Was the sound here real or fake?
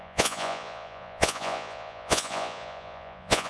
fake